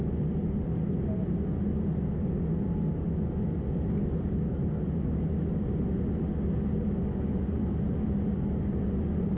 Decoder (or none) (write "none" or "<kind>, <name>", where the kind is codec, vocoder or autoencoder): none